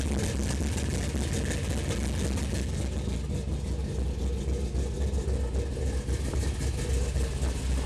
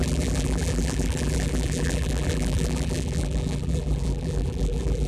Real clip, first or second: first